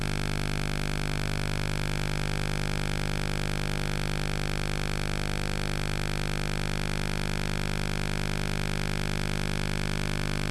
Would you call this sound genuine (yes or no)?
yes